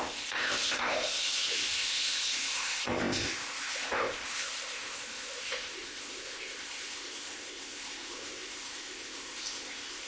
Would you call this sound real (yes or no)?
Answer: no